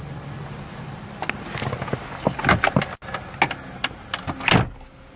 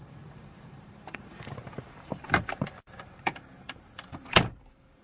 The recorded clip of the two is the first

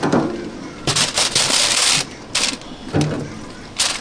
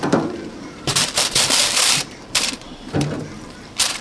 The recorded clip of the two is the first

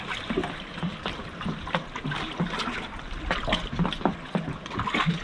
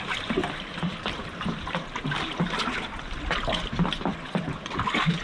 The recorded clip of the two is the first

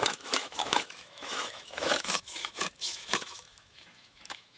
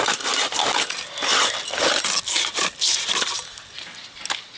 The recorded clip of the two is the second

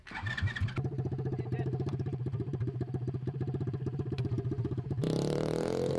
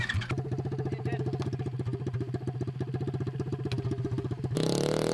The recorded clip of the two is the second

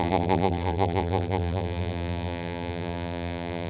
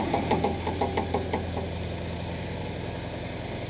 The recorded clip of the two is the second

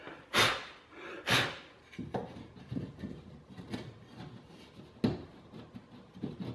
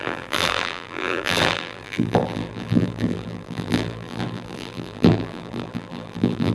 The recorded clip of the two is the first